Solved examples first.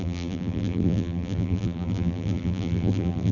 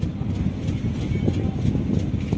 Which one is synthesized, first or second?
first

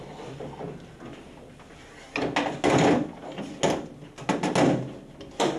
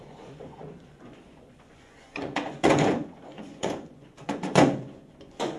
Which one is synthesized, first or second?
second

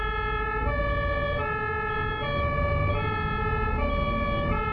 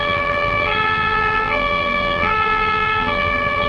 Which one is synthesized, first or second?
second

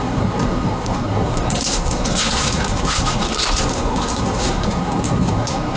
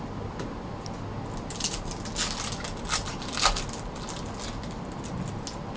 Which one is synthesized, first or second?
first